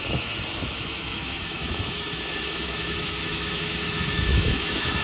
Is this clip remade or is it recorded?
remade